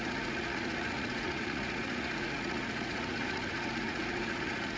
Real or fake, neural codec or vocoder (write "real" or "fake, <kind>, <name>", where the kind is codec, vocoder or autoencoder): fake, vocoder, Vocos